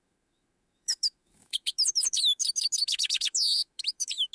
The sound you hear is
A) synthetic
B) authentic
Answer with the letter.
A